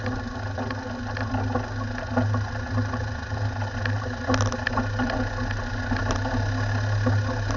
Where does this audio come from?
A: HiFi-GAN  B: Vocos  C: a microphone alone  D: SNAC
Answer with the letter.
C